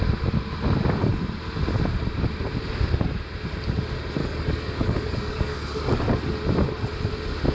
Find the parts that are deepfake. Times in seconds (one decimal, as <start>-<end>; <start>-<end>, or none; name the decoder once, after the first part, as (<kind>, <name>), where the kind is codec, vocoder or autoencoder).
4.2-6.2 (codec, DAC)